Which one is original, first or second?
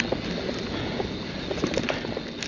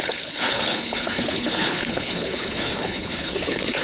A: first